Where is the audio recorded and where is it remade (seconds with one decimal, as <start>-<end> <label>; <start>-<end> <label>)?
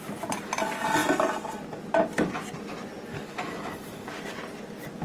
0.0-3.1 recorded; 3.1-4.1 remade; 4.1-5.0 recorded